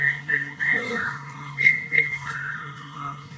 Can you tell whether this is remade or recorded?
remade